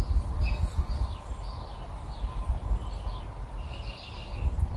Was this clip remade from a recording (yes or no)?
no